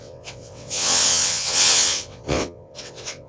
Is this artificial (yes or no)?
yes